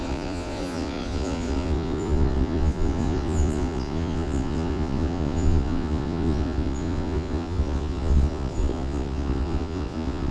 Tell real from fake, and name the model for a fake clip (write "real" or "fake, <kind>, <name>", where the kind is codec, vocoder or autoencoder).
fake, vocoder, Vocos